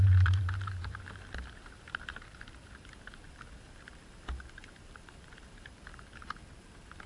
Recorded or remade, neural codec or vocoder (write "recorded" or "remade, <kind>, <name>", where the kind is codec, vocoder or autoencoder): remade, vocoder, BigVGAN v2